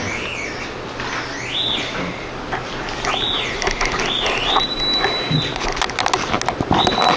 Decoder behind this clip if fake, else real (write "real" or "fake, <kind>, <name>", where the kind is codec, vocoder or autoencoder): real